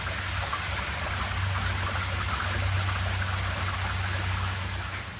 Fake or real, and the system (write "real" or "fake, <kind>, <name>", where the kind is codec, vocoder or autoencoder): real